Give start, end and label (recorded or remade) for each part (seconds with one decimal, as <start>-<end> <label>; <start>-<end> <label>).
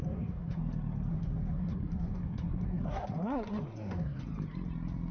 0.0-0.6 remade; 0.6-1.1 recorded; 1.1-4.2 remade; 4.2-5.1 recorded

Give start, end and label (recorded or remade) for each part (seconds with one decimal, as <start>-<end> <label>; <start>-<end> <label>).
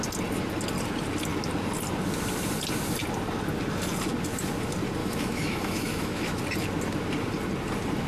0.0-5.0 recorded; 5.0-6.4 remade; 6.4-8.1 recorded